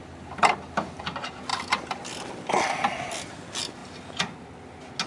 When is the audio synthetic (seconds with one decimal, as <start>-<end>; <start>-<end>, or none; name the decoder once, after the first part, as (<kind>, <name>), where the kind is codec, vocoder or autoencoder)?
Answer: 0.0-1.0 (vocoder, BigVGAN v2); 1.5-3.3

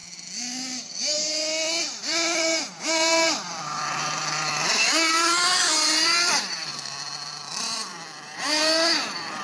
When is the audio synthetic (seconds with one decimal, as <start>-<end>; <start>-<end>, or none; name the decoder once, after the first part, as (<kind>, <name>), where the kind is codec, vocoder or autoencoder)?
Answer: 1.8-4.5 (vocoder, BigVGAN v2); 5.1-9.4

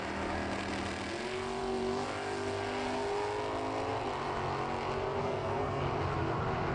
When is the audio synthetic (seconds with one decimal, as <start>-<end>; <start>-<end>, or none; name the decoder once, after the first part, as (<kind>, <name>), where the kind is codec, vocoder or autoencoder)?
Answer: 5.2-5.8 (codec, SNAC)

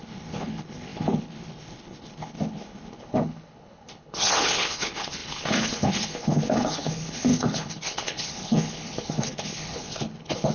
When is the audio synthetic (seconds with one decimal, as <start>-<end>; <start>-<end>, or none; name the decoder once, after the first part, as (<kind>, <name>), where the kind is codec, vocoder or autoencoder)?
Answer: 0.0-10.5 (codec, HILCodec)

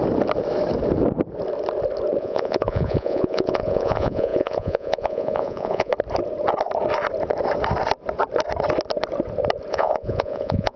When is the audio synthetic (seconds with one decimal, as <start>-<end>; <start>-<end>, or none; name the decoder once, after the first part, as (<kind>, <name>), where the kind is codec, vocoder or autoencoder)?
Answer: 2.2-5.9 (vocoder, Vocos); 9.7-10.8

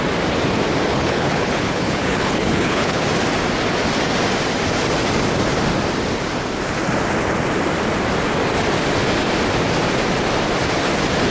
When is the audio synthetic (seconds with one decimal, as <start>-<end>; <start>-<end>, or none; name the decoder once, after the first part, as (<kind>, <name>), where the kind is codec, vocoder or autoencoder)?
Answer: 0.9-3.0 (codec, HILCodec)

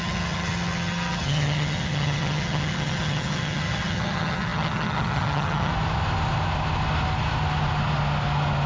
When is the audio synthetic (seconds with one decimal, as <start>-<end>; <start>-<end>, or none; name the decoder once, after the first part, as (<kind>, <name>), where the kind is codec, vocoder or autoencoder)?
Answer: 0.0-5.7 (vocoder, HiFi-GAN)